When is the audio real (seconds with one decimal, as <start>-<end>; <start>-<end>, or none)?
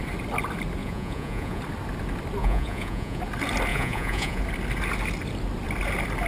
0.0-0.8; 1.6-2.4; 3.2-3.7; 4.4-6.3